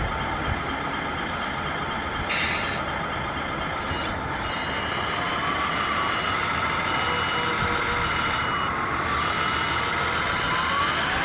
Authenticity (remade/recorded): recorded